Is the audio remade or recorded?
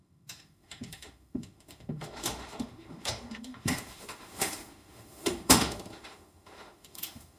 remade